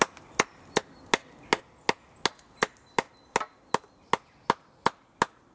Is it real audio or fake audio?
real